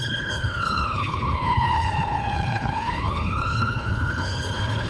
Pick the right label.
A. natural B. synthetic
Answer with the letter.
B